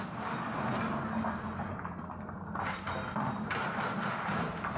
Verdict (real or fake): real